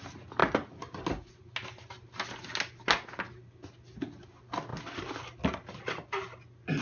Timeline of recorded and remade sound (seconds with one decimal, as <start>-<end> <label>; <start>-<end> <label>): 0.0-6.8 recorded